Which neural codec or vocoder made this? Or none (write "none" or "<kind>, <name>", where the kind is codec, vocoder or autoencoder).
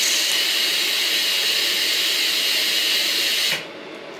none